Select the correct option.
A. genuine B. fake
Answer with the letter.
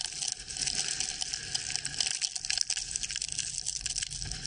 A